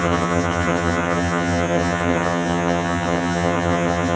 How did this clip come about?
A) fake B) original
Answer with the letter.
A